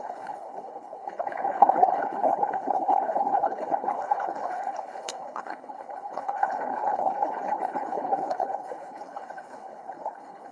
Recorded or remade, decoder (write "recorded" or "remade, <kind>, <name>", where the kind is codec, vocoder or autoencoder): remade, codec, HILCodec